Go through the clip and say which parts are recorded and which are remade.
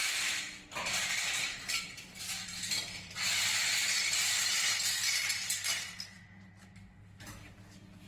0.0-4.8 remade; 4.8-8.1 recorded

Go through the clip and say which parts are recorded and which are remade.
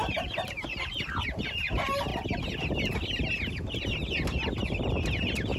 0.0-2.1 remade; 2.1-5.6 recorded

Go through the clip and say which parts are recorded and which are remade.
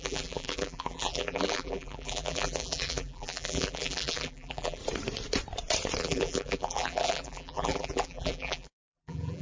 0.0-4.8 remade; 4.8-6.0 recorded; 6.0-9.4 remade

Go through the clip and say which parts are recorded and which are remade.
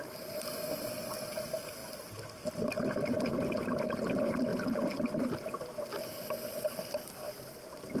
0.0-1.8 remade; 1.8-3.8 recorded; 3.8-4.5 remade; 4.5-5.2 recorded; 5.2-5.9 remade; 5.9-6.5 recorded; 6.5-8.0 remade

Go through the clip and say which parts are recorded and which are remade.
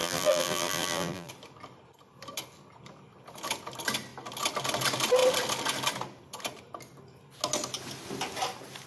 0.0-1.3 remade; 1.3-8.9 recorded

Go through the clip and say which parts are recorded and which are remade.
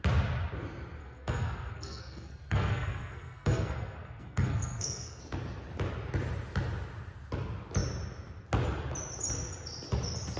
0.0-1.0 recorded; 1.0-5.2 remade; 5.2-10.4 recorded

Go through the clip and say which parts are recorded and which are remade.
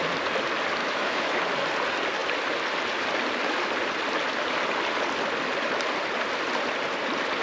0.0-0.8 recorded; 0.8-1.4 remade; 1.4-7.4 recorded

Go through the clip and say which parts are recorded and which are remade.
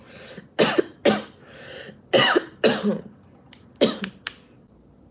0.0-5.1 recorded